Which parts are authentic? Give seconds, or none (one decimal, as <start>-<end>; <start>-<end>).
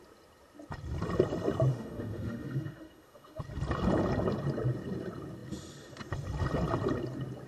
0.0-1.7; 3.4-7.5